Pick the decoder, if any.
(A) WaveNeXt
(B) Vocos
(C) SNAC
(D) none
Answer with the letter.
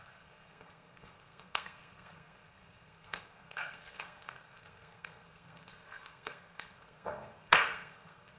C